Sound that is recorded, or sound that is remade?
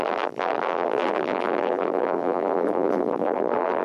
remade